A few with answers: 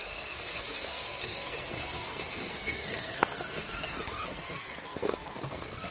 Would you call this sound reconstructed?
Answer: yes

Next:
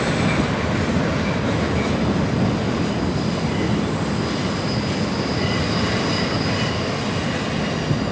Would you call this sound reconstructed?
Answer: no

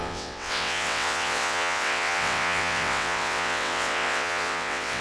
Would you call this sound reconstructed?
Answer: yes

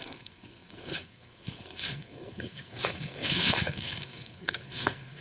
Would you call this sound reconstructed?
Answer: yes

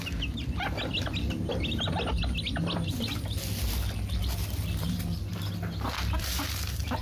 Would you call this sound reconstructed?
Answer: no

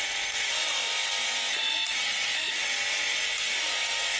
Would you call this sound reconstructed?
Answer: no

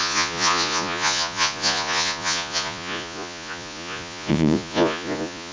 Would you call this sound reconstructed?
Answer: yes